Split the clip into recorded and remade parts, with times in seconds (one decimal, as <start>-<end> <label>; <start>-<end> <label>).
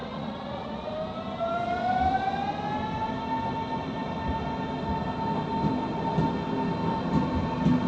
0.0-0.9 remade; 0.9-7.9 recorded